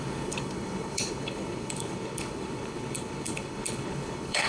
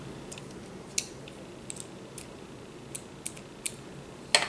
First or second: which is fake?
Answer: first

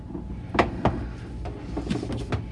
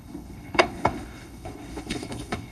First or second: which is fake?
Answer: second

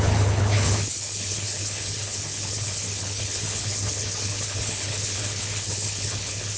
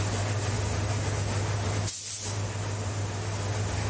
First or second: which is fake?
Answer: first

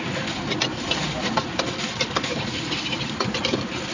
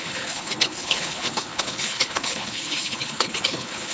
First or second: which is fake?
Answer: second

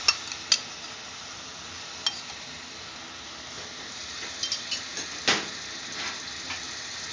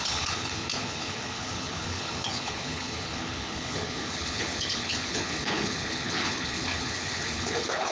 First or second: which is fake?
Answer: second